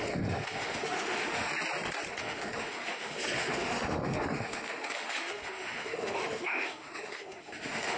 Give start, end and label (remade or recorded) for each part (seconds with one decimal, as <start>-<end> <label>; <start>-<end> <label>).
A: 0.0-1.5 remade; 1.5-2.1 recorded; 2.1-8.0 remade